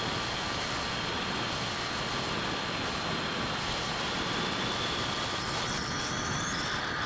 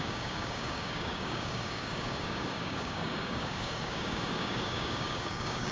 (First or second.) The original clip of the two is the first